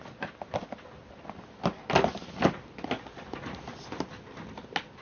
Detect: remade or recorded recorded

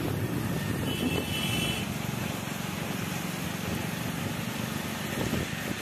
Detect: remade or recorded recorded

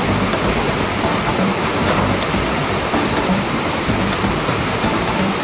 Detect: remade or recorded recorded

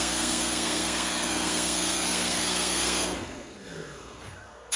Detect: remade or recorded remade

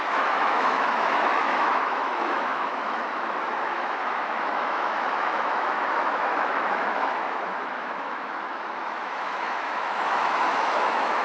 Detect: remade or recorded remade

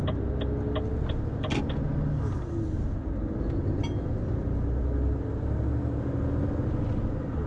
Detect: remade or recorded recorded